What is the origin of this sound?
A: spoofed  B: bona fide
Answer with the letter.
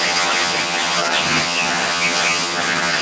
A